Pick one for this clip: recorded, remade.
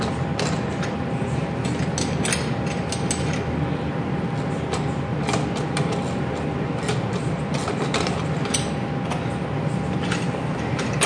recorded